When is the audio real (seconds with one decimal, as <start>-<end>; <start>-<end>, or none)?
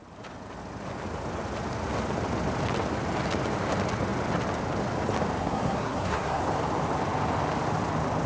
0.0-5.4; 6.4-8.3